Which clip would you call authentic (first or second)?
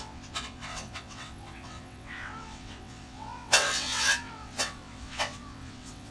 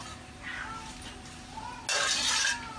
second